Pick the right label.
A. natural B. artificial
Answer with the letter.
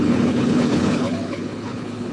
B